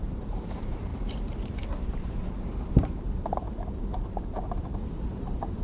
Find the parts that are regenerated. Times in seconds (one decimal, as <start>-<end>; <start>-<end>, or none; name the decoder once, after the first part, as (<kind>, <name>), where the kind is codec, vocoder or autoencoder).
0.0-5.6 (vocoder, BigVGAN v2)